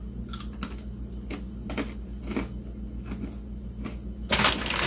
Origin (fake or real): real